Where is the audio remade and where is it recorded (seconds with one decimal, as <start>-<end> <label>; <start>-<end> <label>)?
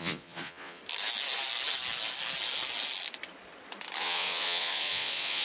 0.0-0.8 remade; 0.8-4.0 recorded; 4.0-5.4 remade